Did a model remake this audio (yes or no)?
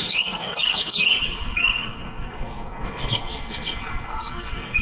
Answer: yes